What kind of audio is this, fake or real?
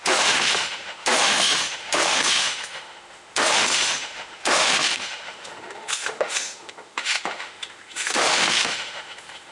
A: fake